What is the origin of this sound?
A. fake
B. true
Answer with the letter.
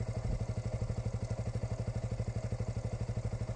B